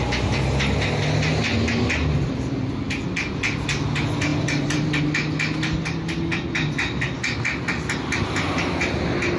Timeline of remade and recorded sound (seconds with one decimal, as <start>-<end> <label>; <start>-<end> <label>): 0.0-2.0 recorded; 2.0-2.7 remade; 2.7-4.3 recorded; 4.3-5.0 remade; 5.0-9.4 recorded